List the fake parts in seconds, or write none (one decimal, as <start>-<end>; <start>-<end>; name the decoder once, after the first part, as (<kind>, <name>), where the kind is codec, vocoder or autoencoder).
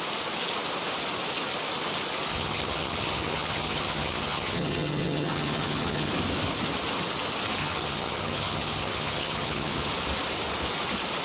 2.3-6.1 (vocoder, HiFi-GAN); 7.6-9.9